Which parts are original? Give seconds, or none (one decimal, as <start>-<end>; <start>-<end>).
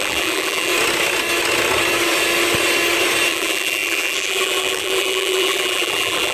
0.7-3.3